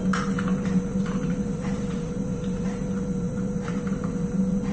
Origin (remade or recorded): remade